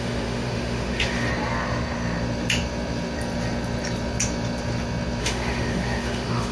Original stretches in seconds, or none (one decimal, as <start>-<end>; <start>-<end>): 1.3-5.2